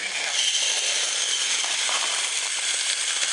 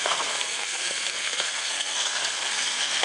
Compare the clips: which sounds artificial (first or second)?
second